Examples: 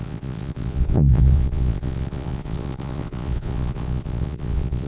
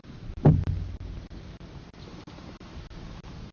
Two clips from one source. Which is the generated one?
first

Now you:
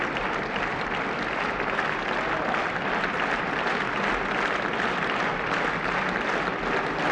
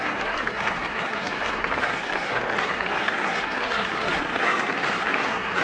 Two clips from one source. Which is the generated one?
second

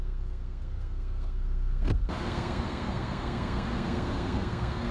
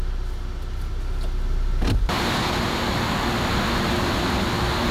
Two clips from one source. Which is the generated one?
first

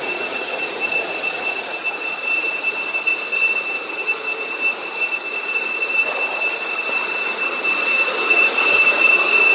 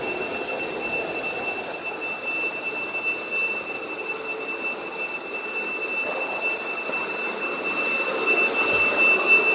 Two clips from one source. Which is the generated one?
first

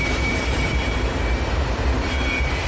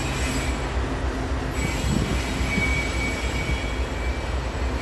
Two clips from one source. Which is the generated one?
first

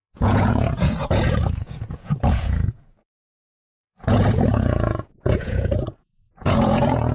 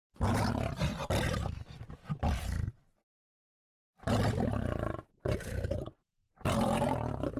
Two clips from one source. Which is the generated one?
first